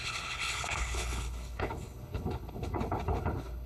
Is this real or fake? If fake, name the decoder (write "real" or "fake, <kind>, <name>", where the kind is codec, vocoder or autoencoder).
fake, codec, HILCodec